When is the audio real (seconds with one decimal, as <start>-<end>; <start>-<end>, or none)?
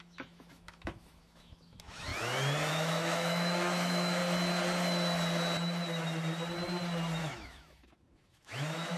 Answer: 2.1-2.7; 4.2-7.2